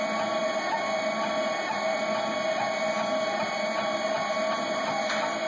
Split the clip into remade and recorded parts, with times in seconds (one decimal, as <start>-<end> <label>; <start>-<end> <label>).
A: 0.0-5.5 recorded